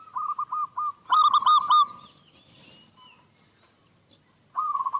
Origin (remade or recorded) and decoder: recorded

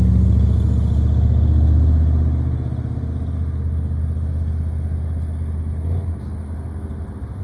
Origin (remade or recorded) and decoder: recorded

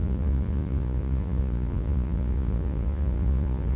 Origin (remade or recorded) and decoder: remade, vocoder, Vocos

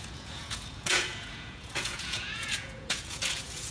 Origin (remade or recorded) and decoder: remade, vocoder, Vocos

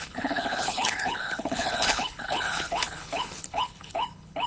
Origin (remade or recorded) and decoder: remade, codec, HILCodec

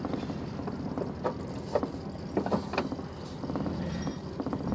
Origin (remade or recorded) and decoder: recorded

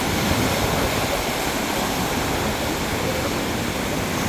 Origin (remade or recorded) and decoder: recorded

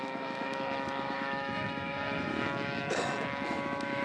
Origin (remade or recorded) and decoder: remade, autoencoder, DAC-VAE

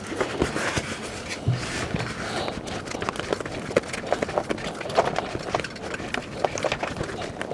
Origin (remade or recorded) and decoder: recorded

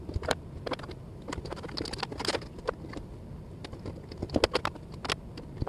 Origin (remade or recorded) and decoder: recorded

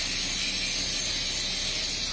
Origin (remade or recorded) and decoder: recorded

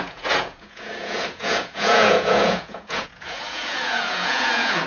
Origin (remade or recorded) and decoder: remade, vocoder, Vocos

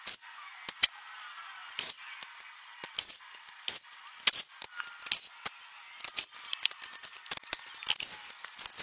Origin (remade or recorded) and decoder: recorded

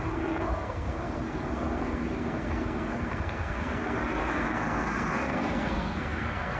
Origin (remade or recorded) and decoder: remade, codec, SNAC